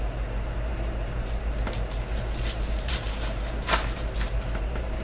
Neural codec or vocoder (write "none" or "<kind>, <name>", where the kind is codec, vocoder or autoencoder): vocoder, BigVGAN v2